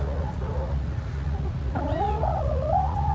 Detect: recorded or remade remade